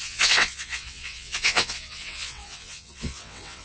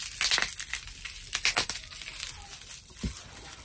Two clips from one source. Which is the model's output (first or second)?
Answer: first